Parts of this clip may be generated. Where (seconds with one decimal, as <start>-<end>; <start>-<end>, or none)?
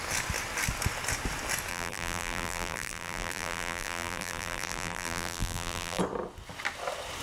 1.7-6.0